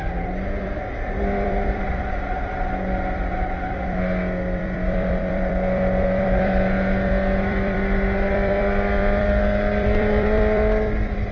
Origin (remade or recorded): remade